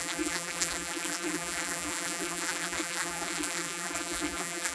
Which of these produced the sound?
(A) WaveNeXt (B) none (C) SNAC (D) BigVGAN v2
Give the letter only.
D